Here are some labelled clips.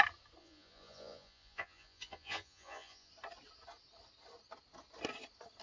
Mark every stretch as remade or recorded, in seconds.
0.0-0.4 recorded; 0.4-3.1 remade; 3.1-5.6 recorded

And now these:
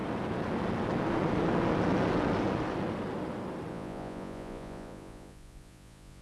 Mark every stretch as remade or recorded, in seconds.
0.0-3.7 recorded; 3.7-6.2 remade

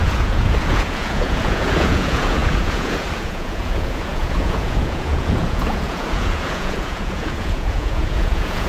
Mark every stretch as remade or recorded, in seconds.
0.0-8.7 remade

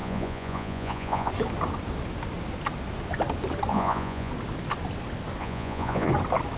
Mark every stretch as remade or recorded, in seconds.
0.0-1.3 remade; 1.3-3.7 recorded; 3.7-4.3 remade; 4.3-5.4 recorded; 5.4-6.1 remade; 6.1-6.6 recorded